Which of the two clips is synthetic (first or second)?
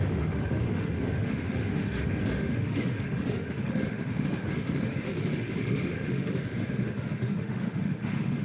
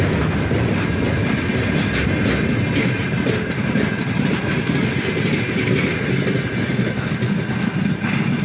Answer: first